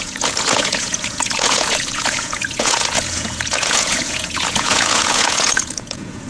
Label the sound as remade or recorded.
remade